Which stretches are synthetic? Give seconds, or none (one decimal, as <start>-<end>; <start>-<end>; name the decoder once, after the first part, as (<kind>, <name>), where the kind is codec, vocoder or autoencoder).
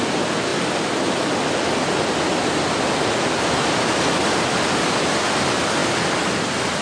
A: none